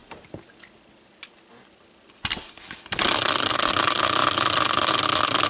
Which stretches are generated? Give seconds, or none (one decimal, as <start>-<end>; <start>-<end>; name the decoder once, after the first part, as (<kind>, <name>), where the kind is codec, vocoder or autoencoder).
none